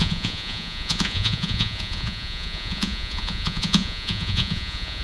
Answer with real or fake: fake